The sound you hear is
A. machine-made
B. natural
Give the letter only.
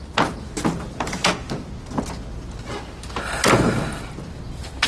B